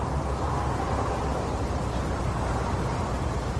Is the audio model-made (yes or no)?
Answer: no